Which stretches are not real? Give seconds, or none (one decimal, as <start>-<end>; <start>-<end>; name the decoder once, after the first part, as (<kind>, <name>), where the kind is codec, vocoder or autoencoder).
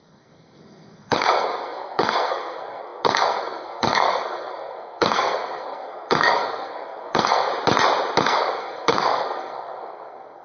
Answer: 0.0-7.5 (codec, SNAC); 8.2-10.4